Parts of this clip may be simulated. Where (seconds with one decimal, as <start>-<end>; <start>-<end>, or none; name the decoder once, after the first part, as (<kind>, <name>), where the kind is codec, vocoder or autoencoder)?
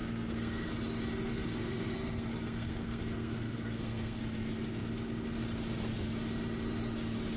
0.0-0.7 (codec, SNAC); 1.3-4.2